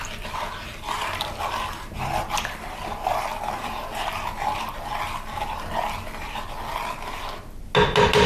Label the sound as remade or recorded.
recorded